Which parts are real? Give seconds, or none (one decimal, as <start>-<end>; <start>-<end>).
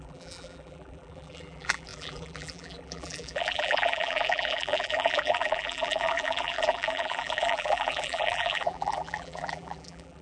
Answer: none